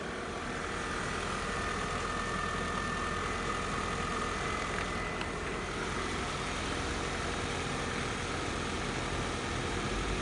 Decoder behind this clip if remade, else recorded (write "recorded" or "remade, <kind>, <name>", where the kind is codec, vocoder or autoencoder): recorded